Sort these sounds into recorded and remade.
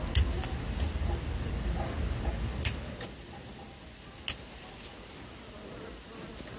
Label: recorded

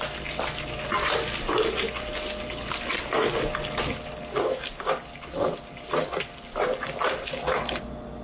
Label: recorded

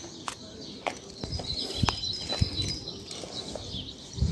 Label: remade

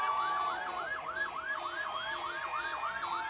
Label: recorded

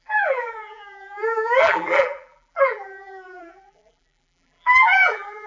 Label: remade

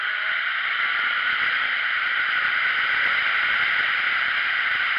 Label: remade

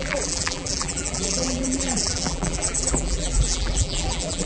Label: remade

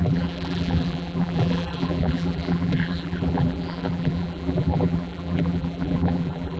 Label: remade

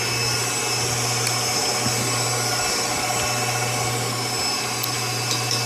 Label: recorded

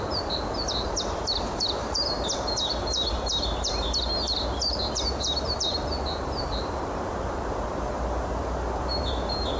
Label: remade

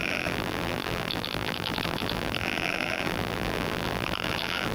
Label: remade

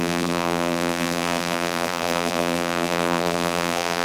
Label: remade